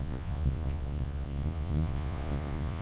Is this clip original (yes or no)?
no